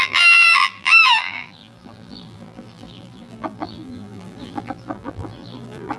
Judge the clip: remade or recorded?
remade